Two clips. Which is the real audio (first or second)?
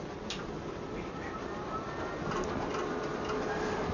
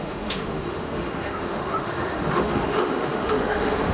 first